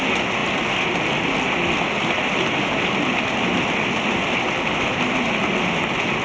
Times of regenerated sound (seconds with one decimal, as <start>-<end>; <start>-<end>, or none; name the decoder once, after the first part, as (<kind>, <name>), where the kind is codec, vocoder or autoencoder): none